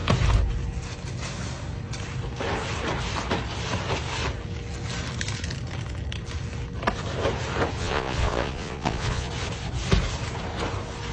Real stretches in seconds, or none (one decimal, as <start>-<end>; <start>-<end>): 0.0-7.8; 9.3-11.1